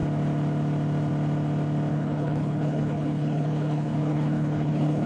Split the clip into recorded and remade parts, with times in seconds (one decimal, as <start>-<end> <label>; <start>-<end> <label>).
0.0-1.9 recorded; 1.9-5.1 remade